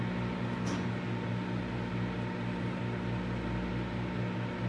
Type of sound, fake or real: real